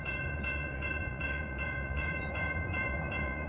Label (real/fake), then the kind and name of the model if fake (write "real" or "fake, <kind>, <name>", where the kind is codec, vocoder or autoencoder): fake, vocoder, Vocos